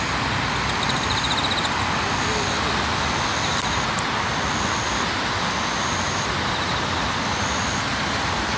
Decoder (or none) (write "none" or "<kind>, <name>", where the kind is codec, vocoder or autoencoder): none